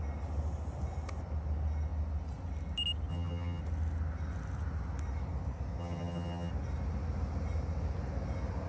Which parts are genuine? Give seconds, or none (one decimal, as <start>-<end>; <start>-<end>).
0.0-3.1; 3.6-5.8; 6.5-8.7